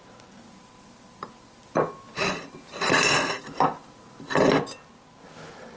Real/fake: real